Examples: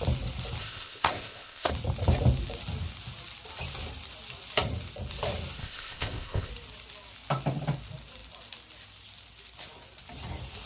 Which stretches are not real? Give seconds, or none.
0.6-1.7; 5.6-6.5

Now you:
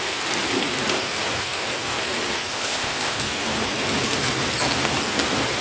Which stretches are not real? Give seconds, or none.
2.5-3.2

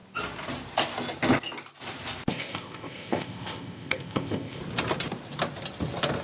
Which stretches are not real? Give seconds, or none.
2.3-4.6

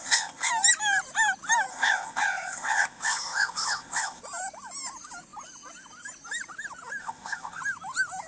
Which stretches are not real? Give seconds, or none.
0.0-0.5; 1.7-4.2; 7.0-7.6